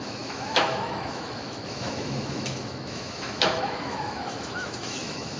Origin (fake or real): fake